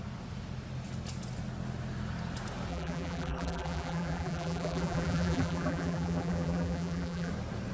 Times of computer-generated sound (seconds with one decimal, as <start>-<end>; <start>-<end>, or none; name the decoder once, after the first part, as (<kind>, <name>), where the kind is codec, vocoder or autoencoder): 2.7-7.3 (vocoder, BigVGAN v2)